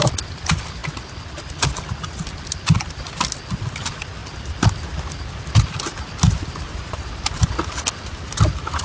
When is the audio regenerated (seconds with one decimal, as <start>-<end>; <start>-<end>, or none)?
none